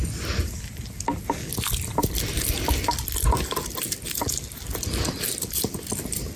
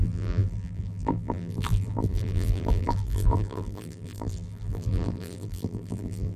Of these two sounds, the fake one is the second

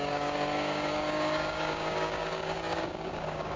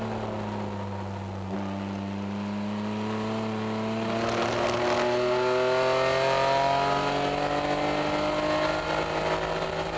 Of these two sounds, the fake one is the first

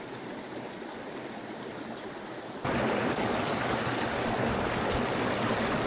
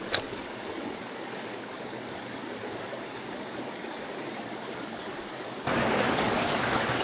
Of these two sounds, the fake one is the second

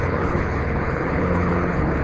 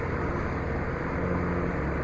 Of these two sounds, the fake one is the first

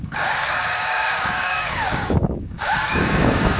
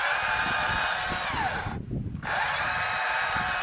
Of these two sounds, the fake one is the first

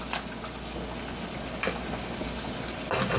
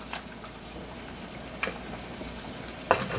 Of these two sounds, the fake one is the second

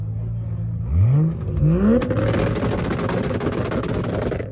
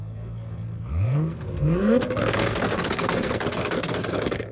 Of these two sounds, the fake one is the second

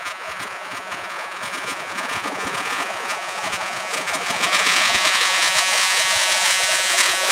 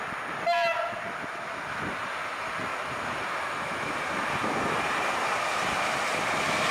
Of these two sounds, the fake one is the first